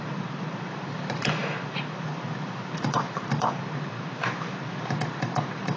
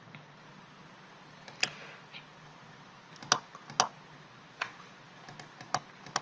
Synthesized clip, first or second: first